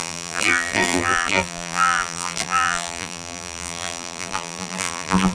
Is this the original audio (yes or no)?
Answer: no